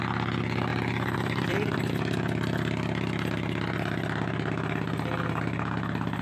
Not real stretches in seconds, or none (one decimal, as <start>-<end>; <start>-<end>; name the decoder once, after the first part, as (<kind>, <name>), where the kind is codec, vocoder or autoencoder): 0.7-1.9 (vocoder, BigVGAN v2)